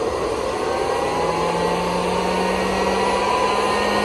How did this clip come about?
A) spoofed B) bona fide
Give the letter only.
B